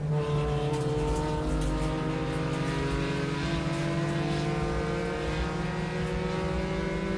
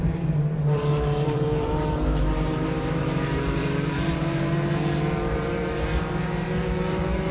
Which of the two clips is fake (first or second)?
second